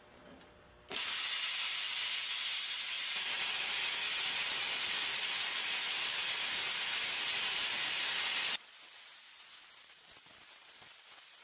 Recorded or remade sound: recorded